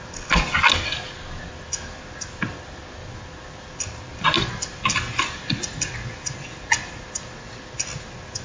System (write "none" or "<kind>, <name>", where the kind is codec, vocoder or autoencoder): none